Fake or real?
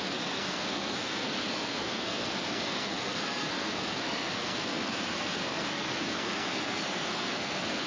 fake